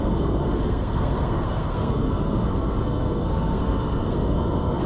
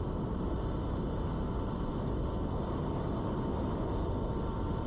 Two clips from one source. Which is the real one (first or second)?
second